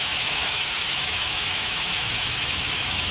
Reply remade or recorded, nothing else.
remade